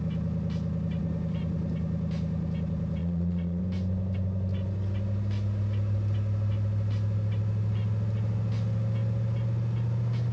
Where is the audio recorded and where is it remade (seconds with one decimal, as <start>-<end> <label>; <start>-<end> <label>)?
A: 0.0-3.0 recorded; 3.0-3.6 remade; 3.6-10.3 recorded